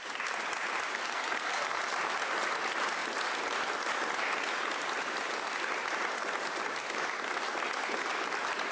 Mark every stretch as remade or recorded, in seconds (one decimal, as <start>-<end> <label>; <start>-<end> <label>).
0.0-0.9 recorded; 0.9-1.8 remade; 1.8-8.7 recorded